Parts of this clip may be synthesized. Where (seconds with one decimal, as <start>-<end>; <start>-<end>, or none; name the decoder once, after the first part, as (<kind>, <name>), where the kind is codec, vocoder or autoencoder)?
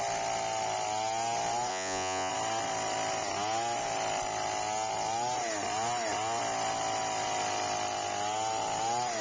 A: 1.7-2.3 (vocoder, Vocos)